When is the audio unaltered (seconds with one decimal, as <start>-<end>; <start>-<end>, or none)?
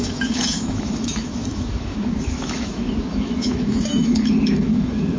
none